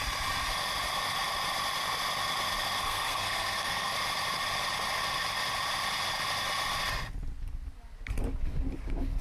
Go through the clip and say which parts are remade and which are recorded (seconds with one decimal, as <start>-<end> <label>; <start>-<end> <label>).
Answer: 0.0-2.8 recorded; 2.8-3.9 remade; 3.9-9.2 recorded